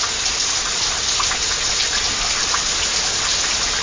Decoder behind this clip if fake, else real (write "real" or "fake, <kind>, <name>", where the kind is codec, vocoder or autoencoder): real